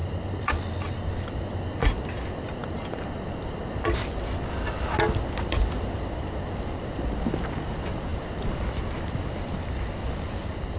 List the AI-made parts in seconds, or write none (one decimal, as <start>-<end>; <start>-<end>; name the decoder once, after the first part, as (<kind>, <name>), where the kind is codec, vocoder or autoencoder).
none